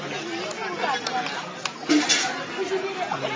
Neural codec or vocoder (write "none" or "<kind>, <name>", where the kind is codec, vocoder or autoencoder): none